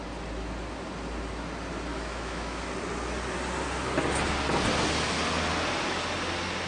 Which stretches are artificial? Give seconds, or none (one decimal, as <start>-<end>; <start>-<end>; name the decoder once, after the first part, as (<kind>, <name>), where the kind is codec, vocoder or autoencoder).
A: 1.9-2.6 (autoencoder, DAC-VAE)